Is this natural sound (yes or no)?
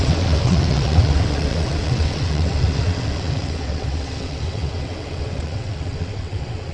no